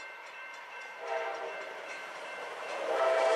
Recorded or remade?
remade